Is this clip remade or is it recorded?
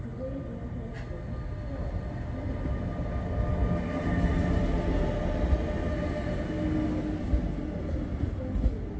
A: recorded